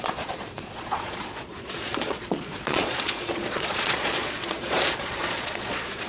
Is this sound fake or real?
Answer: fake